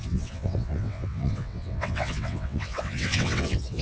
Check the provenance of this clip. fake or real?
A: fake